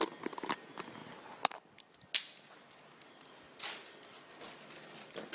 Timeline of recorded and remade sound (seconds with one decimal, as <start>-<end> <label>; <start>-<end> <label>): 0.0-5.3 recorded